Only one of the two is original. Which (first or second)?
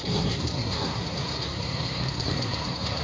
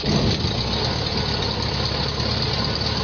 second